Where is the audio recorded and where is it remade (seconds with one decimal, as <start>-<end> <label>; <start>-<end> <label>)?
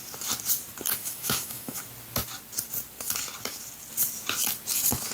0.0-1.0 recorded; 1.0-1.8 remade; 1.8-5.1 recorded